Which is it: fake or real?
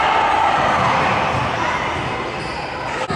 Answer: real